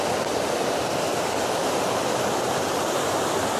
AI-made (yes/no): no